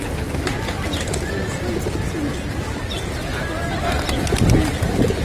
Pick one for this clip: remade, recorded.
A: recorded